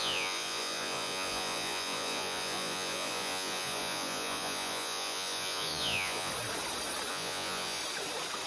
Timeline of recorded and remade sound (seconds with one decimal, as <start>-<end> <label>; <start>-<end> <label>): 0.0-6.3 remade; 6.3-7.1 recorded; 7.1-7.8 remade; 7.8-8.5 recorded